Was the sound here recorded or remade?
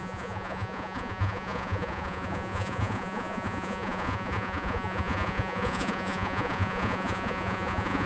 remade